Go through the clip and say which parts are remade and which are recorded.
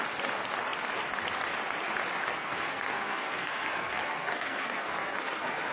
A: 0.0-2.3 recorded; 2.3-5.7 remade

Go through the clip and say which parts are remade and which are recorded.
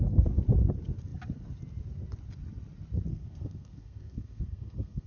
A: 0.0-3.1 recorded; 3.1-5.1 remade